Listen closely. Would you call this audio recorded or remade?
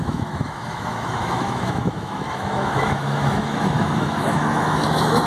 remade